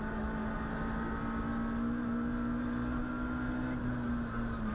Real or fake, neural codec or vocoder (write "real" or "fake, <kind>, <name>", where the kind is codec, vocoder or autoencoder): real